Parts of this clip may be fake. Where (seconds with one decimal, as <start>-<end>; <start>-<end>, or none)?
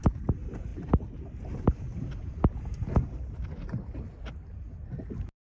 none